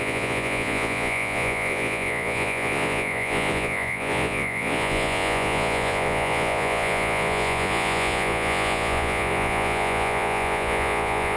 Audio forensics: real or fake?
fake